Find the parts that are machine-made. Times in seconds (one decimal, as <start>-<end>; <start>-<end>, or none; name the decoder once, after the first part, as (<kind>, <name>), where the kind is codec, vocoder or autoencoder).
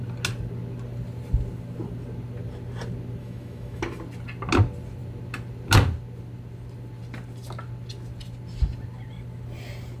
3.2-3.8 (autoencoder, DAC-VAE)